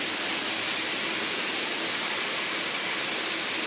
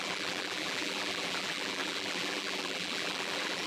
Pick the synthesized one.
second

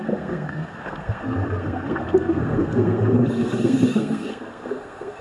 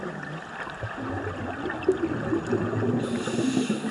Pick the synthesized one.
first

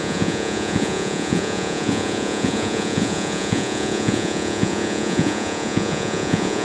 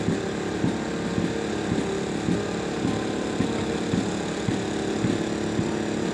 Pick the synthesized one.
first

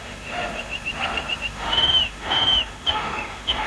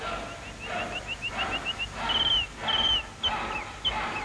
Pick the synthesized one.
first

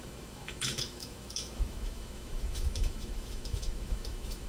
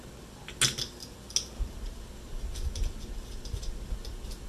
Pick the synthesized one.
first